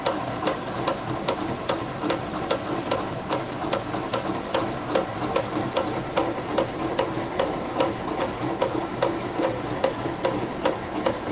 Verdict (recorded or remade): recorded